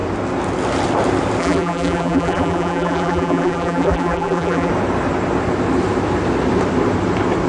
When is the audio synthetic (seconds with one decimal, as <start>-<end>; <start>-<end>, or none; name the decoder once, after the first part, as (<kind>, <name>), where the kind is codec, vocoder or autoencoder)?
1.4-4.7 (vocoder, BigVGAN v2)